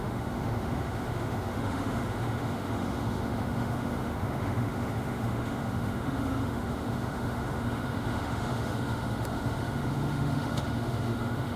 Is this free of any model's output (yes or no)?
no